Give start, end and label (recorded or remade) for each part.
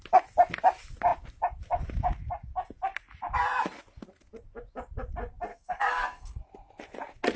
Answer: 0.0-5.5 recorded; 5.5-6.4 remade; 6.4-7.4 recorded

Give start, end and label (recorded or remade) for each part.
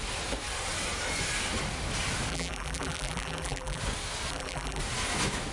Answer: 0.0-2.3 recorded; 2.3-3.8 remade; 3.8-4.3 recorded; 4.3-4.8 remade; 4.8-5.5 recorded